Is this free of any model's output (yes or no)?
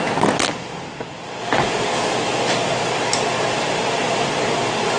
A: yes